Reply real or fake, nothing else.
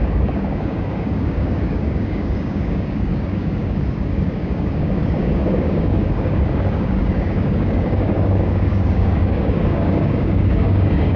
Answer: fake